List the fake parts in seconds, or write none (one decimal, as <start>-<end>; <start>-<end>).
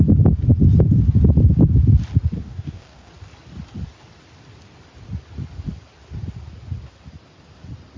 2.4-3.1